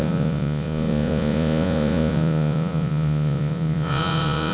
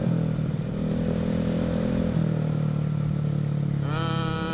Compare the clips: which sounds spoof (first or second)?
first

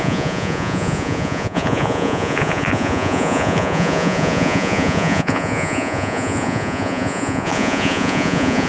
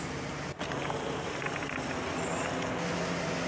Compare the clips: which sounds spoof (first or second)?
first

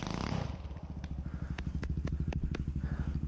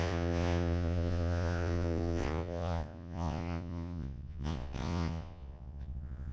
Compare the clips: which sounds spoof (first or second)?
second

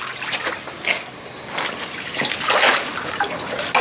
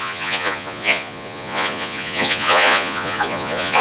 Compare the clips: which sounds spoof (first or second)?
second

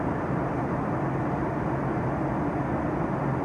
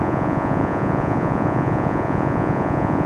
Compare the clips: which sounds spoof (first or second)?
second